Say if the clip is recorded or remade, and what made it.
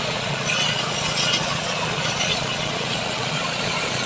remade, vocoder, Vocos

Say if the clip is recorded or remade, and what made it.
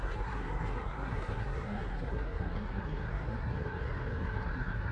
remade, codec, SNAC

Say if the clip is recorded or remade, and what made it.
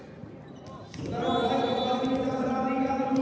recorded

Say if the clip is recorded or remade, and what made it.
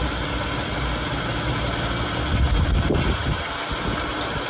recorded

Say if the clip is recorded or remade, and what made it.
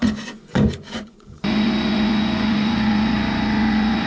remade, vocoder, Vocos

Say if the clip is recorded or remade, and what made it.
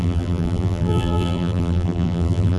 remade, vocoder, BigVGAN v2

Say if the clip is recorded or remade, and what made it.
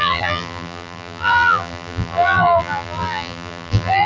remade, vocoder, BigVGAN v2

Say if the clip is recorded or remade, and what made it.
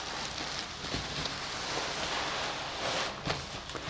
recorded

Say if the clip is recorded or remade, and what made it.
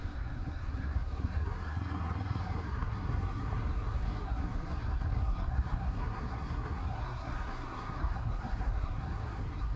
remade, codec, SNAC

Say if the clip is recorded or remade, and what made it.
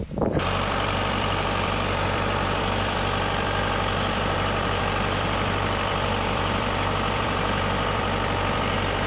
remade, vocoder, BigVGAN v2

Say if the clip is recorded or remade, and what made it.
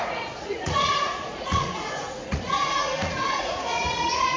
remade, vocoder, Vocos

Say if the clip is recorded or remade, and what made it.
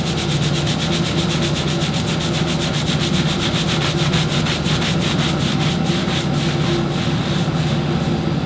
recorded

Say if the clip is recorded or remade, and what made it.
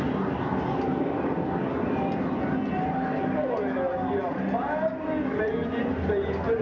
recorded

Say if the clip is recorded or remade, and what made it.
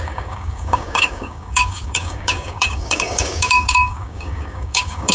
remade, codec, DAC